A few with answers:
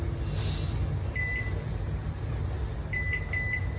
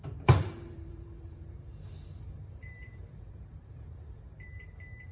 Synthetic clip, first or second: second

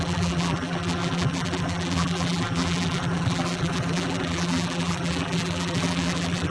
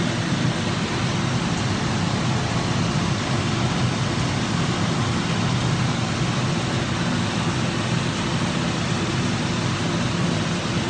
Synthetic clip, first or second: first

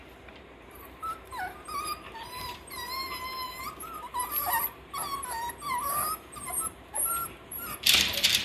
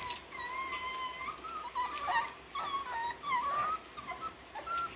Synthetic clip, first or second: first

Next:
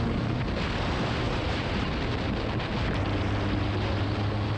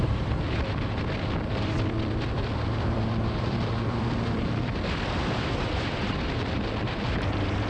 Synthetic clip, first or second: second